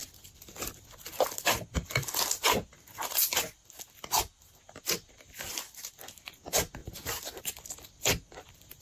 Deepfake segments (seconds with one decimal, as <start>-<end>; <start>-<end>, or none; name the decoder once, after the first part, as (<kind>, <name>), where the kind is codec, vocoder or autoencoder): 6.8-7.4 (vocoder, BigVGAN v2)

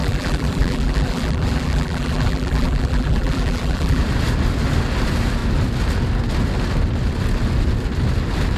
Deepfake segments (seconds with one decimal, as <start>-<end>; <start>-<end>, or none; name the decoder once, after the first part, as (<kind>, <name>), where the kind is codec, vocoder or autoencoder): 0.0-4.0 (vocoder, BigVGAN v2)